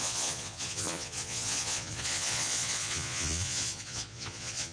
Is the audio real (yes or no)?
no